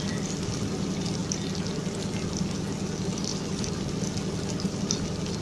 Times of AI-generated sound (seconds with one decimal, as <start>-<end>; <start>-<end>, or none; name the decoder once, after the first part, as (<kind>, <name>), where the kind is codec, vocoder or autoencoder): 3.3-3.9 (vocoder, BigVGAN v2)